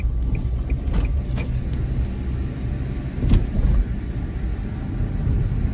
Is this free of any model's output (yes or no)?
yes